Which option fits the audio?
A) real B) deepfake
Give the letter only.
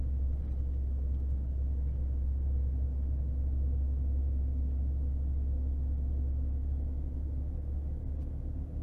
A